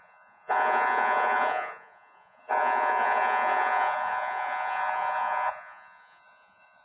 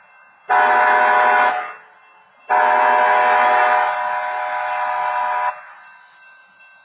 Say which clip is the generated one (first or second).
first